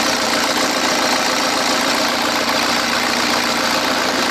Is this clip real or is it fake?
fake